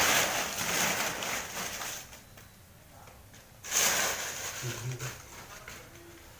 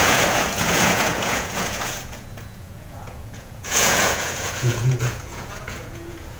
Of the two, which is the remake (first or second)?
second